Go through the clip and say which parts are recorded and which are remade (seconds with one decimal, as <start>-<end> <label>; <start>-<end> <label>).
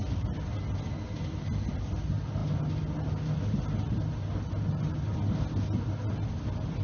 0.0-6.8 recorded